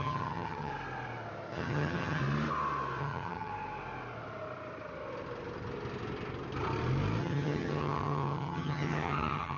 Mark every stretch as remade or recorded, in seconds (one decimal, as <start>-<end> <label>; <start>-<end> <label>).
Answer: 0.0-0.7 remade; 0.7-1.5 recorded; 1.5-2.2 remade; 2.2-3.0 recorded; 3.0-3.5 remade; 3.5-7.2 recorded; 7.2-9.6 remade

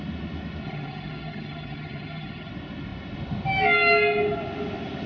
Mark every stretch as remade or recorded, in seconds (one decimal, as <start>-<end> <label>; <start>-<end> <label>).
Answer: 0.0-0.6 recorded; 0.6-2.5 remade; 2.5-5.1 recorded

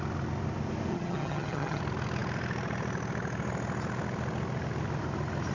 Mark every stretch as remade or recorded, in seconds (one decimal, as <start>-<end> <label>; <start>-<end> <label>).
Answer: 0.0-0.9 recorded; 0.9-1.8 remade; 1.8-5.5 recorded